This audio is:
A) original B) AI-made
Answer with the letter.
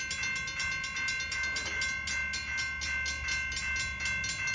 A